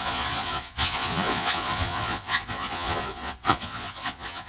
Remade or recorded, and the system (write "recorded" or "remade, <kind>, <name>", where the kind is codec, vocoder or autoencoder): remade, vocoder, Vocos